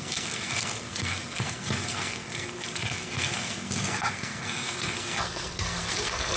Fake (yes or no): yes